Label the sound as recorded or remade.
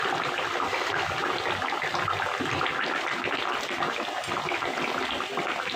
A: recorded